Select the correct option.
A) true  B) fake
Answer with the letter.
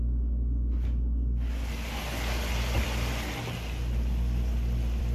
A